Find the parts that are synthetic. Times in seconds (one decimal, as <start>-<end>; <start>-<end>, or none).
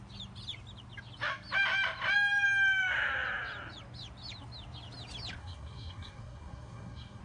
5.4-7.2